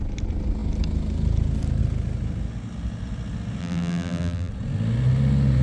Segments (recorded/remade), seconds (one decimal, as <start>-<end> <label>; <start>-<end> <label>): 0.0-3.6 recorded; 3.6-4.5 remade; 4.5-5.6 recorded